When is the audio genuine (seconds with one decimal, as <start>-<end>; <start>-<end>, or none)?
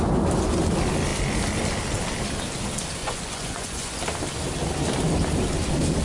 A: 0.0-3.0; 4.0-6.0